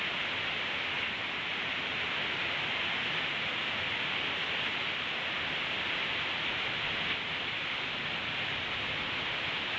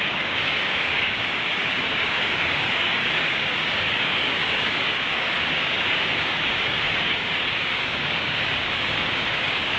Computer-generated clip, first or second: second